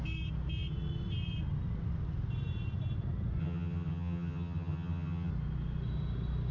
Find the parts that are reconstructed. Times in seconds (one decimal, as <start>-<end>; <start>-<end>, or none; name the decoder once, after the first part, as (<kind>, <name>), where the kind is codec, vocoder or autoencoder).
3.4-5.3 (vocoder, HiFi-GAN)